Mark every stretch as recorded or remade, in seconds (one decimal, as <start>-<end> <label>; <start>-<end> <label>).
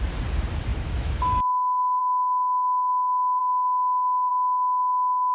0.0-0.7 recorded; 0.7-2.0 remade; 2.0-3.4 recorded; 3.4-4.3 remade; 4.3-5.3 recorded